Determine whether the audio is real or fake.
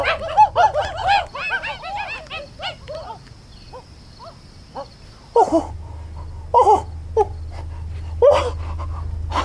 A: real